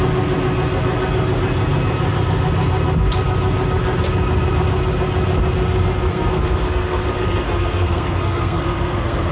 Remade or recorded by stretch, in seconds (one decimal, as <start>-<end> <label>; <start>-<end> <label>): 0.0-6.0 recorded; 6.0-9.3 remade

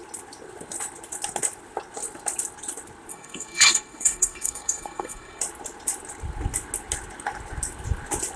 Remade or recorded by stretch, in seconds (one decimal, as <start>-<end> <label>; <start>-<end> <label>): 0.0-3.1 recorded; 3.1-5.4 remade; 5.4-8.4 recorded

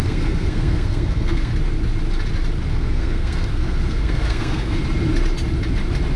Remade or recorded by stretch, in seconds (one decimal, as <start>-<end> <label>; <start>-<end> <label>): 0.0-1.5 remade; 1.5-2.7 recorded; 2.7-4.8 remade; 4.8-6.2 recorded

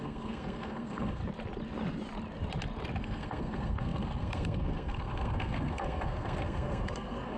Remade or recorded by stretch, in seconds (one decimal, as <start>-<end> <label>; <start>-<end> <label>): 0.0-1.2 remade; 1.2-3.0 recorded; 3.0-7.4 remade

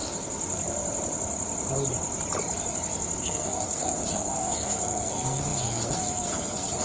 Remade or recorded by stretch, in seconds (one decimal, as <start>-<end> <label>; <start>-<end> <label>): 0.0-3.2 recorded; 3.2-6.8 remade

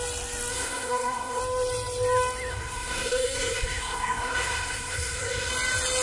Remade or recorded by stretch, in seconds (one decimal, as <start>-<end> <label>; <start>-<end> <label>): 0.0-0.5 recorded; 0.5-1.4 remade; 1.4-2.5 recorded; 2.5-5.5 remade; 5.5-6.0 recorded